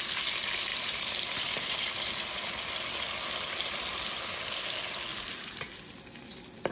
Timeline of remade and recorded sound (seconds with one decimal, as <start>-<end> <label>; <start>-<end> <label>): 0.0-0.7 recorded; 0.7-2.1 remade; 2.1-5.1 recorded; 5.1-5.6 remade; 5.6-6.7 recorded

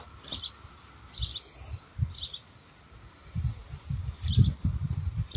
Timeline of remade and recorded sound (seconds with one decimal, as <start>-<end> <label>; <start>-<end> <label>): 0.0-1.3 recorded; 1.3-2.0 remade; 2.0-5.4 recorded

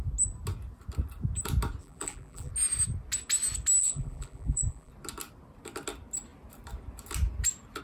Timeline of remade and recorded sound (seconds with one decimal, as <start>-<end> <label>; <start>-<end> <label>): 0.0-1.8 recorded; 1.8-2.5 remade; 2.5-3.8 recorded; 3.8-4.9 remade; 4.9-7.8 recorded

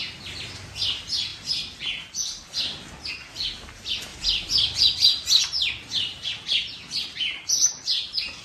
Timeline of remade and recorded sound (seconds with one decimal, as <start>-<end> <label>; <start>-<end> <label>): 0.0-8.4 recorded

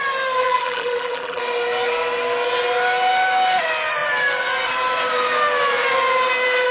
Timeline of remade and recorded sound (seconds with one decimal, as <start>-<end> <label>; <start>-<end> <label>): 0.0-0.4 recorded; 0.4-1.4 remade; 1.4-6.7 recorded

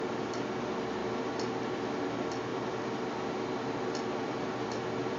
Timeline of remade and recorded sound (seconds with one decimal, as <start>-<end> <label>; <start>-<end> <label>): 0.0-2.5 recorded; 2.5-3.1 remade; 3.1-5.2 recorded

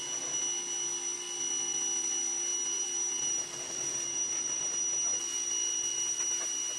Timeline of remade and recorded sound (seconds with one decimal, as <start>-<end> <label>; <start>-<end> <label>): 0.0-2.5 recorded; 2.5-5.2 remade; 5.2-6.8 recorded